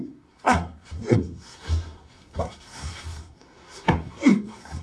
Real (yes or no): no